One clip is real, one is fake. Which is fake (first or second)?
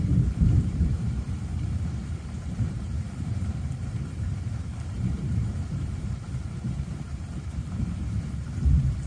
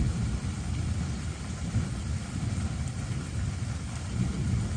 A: first